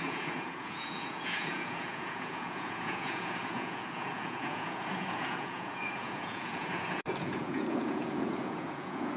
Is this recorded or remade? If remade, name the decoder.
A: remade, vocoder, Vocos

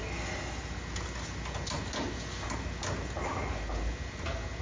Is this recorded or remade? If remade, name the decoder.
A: recorded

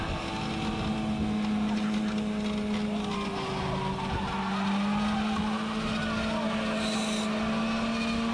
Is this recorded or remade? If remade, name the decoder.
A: recorded